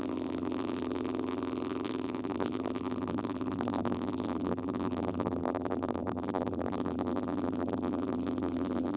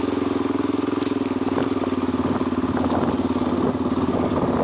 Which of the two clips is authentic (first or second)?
second